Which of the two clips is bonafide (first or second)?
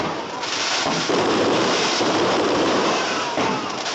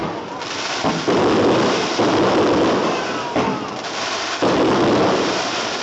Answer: second